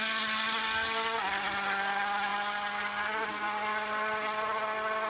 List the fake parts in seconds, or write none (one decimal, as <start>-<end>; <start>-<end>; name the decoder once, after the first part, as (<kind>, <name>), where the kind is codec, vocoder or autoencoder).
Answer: none